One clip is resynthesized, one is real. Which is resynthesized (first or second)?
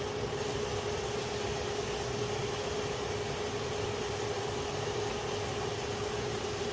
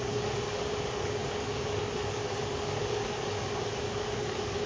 second